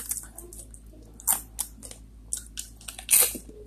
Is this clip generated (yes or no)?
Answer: no